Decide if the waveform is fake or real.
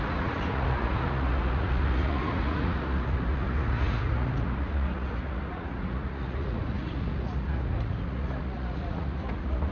fake